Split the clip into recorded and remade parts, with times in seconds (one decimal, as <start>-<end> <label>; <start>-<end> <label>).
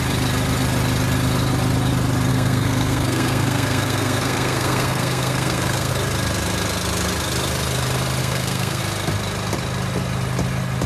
0.0-2.3 recorded; 2.3-5.9 remade; 5.9-8.2 recorded; 8.2-8.8 remade; 8.8-10.9 recorded